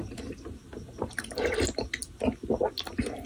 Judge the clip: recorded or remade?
recorded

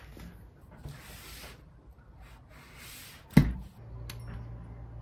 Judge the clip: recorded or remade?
recorded